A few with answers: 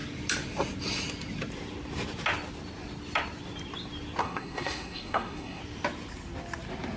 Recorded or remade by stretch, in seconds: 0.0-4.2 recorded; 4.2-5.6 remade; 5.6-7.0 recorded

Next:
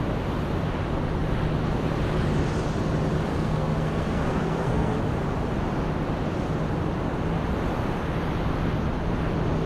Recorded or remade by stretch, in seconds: 0.0-3.3 recorded; 3.3-5.0 remade; 5.0-9.7 recorded